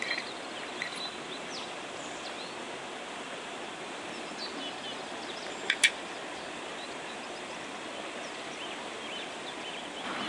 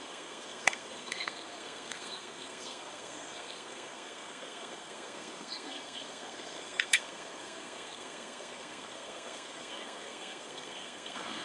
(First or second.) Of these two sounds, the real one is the first